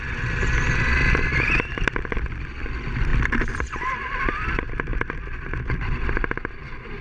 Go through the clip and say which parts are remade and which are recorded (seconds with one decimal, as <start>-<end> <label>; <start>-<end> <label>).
0.0-1.3 recorded; 1.3-2.2 remade; 2.2-3.1 recorded; 3.1-4.2 remade; 4.2-4.9 recorded; 4.9-5.9 remade; 5.9-7.0 recorded